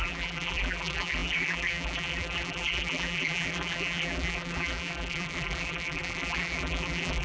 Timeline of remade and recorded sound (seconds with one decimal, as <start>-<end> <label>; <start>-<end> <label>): 0.0-7.2 remade